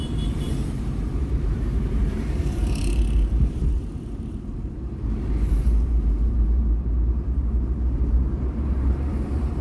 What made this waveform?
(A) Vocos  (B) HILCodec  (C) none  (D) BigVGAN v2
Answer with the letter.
D